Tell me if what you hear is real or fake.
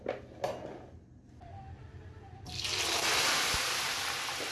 real